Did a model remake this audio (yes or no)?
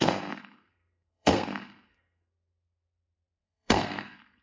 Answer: yes